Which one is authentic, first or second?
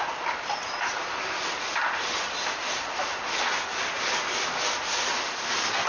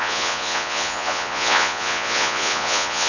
first